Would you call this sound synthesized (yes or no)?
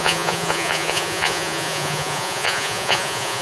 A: yes